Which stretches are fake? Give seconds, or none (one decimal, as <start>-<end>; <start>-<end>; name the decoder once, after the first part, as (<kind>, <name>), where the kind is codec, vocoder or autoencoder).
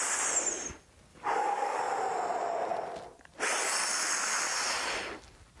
1.1-1.8 (codec, DAC)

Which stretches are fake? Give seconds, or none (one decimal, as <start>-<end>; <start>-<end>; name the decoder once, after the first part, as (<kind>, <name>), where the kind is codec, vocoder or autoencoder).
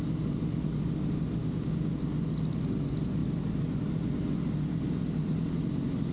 1.4-1.9 (codec, DAC)